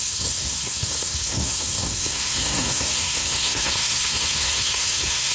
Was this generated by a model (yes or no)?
yes